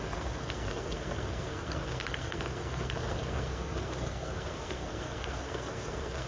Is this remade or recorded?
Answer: remade